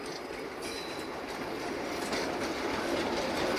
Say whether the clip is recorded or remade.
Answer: recorded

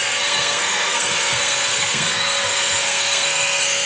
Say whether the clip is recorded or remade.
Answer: remade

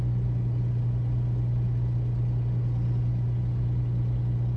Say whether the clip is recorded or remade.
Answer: recorded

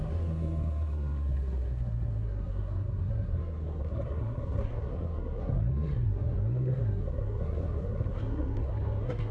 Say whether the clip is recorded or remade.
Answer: remade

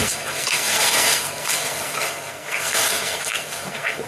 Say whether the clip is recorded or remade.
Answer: remade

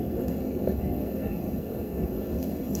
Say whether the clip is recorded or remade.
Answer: remade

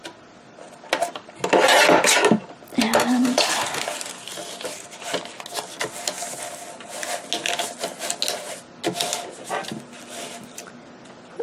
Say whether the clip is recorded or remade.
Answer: recorded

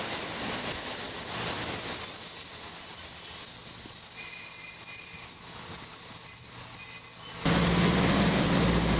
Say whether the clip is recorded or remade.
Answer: recorded